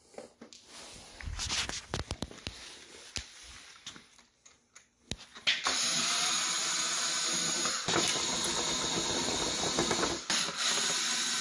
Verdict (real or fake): real